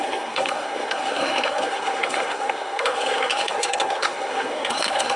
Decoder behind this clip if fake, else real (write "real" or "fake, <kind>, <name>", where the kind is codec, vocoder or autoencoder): fake, codec, SNAC